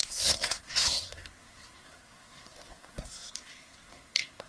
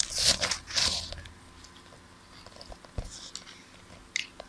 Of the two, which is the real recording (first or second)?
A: second